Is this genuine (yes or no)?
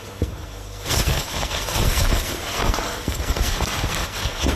no